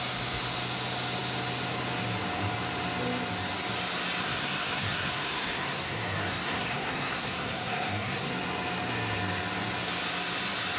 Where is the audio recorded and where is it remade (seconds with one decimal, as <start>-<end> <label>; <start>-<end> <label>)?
0.0-4.2 recorded; 4.2-8.3 remade; 8.3-10.8 recorded